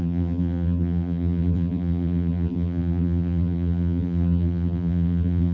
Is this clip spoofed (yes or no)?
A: yes